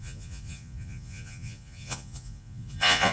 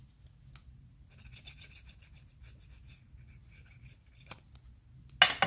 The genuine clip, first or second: second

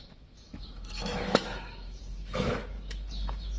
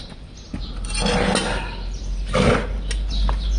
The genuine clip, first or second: second